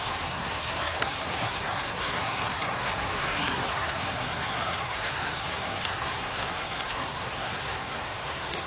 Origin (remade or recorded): remade